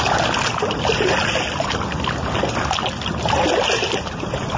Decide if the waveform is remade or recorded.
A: recorded